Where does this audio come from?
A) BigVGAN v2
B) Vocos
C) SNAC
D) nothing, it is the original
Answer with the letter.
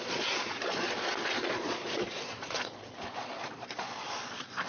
B